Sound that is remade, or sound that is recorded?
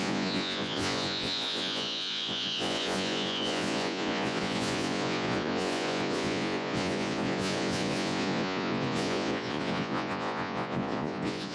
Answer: remade